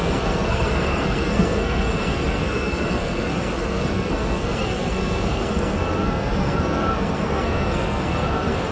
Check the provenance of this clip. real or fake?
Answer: fake